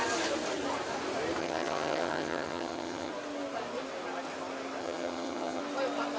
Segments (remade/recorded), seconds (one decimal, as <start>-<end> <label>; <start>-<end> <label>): 0.0-1.4 recorded; 1.4-3.1 remade; 3.1-4.8 recorded; 4.8-5.6 remade; 5.6-6.2 recorded